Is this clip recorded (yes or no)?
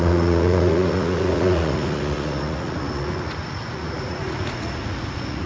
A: no